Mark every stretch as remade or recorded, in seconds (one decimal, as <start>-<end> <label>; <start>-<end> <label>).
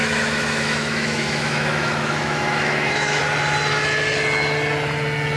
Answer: 0.0-3.2 remade; 3.2-5.4 recorded